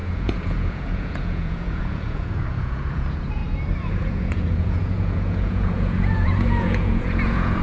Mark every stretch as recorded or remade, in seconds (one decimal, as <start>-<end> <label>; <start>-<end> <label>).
0.0-3.4 remade; 3.4-3.9 recorded; 3.9-7.6 remade